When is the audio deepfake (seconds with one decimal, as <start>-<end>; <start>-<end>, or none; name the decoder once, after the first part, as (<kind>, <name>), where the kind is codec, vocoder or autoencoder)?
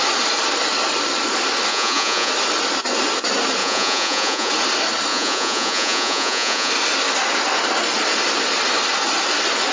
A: 1.7-2.3 (vocoder, Vocos); 3.6-4.5; 5.1-6.7